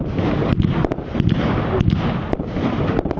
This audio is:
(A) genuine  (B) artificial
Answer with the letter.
A